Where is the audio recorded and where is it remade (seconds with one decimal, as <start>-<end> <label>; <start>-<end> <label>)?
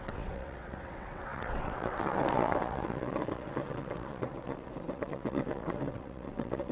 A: 0.0-6.7 remade